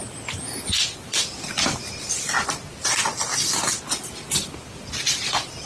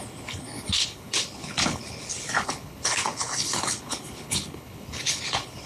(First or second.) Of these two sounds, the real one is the first